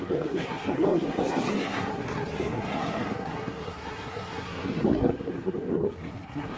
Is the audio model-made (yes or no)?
yes